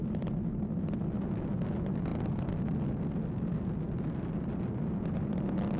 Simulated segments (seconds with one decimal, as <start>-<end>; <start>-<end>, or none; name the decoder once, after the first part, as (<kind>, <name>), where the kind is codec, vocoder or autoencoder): none